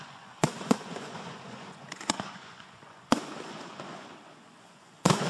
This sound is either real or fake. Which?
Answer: fake